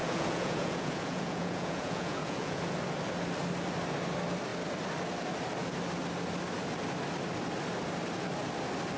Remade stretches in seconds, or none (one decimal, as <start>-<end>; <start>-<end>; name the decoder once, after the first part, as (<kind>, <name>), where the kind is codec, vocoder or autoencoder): 0.0-2.6 (vocoder, Vocos)